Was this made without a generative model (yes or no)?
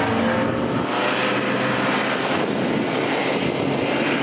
yes